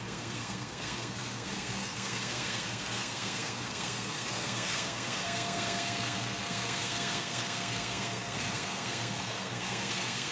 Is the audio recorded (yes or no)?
no